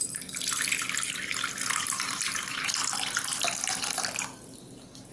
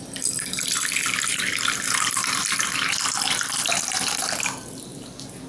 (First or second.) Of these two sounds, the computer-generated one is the second